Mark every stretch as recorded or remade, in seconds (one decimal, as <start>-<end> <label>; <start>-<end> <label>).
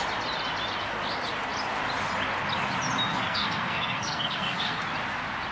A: 0.0-3.1 recorded; 3.1-4.8 remade; 4.8-5.5 recorded